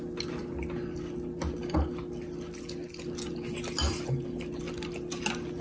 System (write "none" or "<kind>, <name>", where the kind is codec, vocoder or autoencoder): none